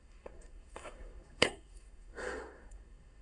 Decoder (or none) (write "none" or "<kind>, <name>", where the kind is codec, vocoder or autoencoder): codec, SNAC